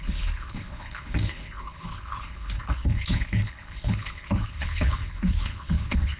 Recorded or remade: remade